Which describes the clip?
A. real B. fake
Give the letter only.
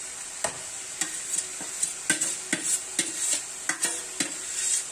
A